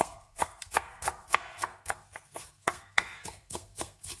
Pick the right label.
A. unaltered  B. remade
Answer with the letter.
B